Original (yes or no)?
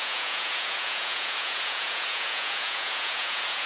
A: no